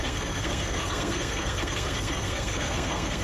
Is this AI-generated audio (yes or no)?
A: yes